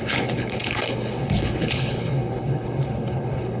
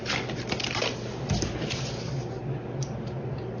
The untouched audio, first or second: second